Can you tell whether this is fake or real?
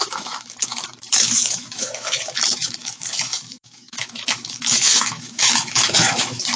fake